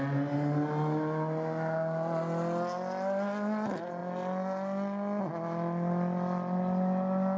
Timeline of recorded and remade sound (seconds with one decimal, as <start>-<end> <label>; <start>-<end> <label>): 0.0-7.4 recorded